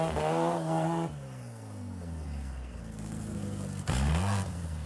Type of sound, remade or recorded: remade